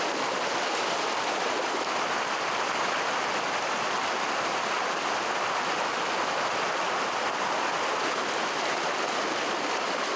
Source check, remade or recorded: recorded